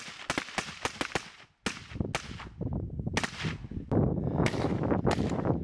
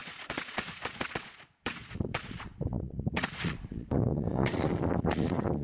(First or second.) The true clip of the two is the first